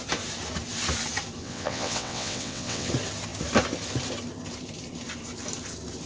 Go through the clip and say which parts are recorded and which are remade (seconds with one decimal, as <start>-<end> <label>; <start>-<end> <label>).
0.0-1.4 recorded; 1.4-2.9 remade; 2.9-6.1 recorded